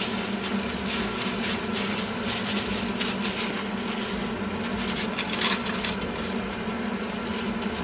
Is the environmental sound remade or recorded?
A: recorded